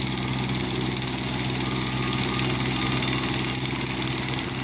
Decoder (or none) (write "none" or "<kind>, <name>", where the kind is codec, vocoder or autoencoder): none